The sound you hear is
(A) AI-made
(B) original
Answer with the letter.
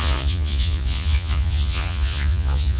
A